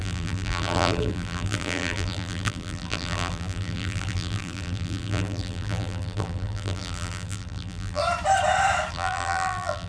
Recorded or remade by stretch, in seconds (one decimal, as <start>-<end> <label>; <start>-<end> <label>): 0.0-8.0 remade; 8.0-8.9 recorded; 8.9-9.9 remade